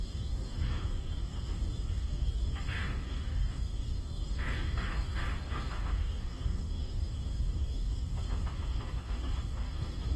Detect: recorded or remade remade